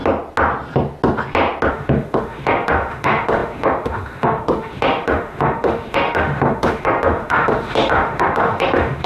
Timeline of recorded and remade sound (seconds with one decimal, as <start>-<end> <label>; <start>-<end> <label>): 0.0-1.7 recorded; 1.7-9.1 remade